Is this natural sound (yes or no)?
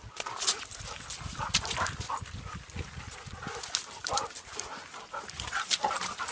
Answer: yes